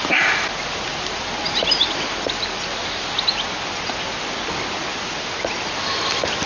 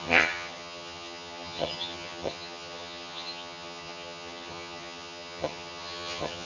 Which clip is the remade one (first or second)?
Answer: second